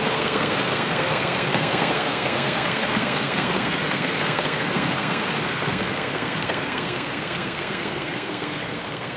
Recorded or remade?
remade